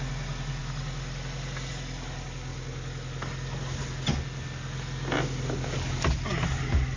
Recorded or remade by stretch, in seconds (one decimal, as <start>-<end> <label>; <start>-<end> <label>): 0.0-7.0 recorded